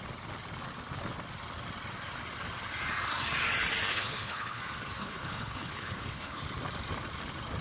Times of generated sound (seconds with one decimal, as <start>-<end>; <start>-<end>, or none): 3.9-4.6; 5.0-6.4